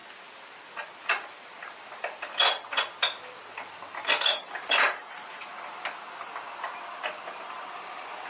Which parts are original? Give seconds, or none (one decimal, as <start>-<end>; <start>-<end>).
0.0-4.3; 5.5-7.4